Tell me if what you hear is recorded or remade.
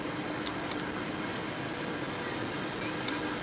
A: recorded